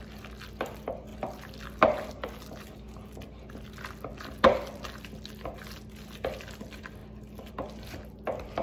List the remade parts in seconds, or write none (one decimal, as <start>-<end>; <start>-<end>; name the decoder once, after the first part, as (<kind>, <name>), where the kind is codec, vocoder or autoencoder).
none